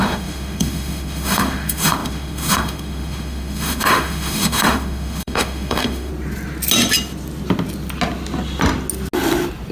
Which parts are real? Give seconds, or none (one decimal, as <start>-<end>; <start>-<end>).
6.1-9.7